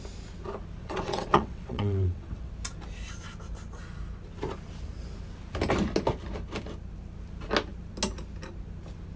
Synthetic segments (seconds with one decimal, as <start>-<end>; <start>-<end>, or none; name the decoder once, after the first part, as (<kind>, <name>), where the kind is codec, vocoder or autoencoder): 0.8-2.5 (vocoder, WaveNeXt)